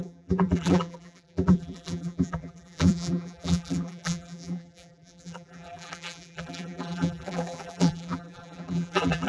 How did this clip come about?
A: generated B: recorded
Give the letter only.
A